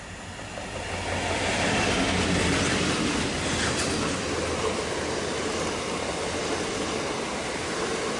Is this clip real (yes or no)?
yes